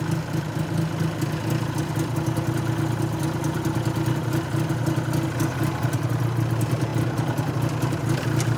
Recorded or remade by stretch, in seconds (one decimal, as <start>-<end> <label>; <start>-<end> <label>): 0.0-8.6 recorded